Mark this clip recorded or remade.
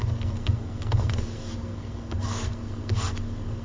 remade